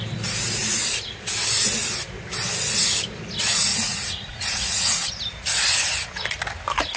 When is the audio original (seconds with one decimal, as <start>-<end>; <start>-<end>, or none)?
0.0-3.7; 5.1-7.0